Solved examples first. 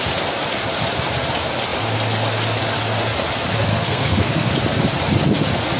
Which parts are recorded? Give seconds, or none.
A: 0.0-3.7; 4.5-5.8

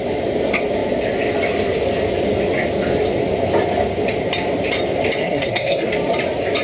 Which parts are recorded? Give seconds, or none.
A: 0.0-5.2; 5.9-6.6

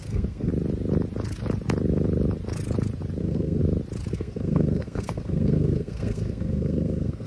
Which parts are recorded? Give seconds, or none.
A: 0.5-3.2; 3.6-4.1

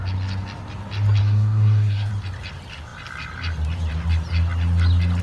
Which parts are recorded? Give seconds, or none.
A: 0.0-1.2; 2.1-5.2